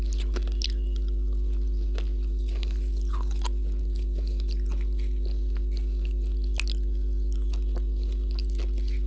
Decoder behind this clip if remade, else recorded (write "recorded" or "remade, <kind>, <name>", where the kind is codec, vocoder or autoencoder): recorded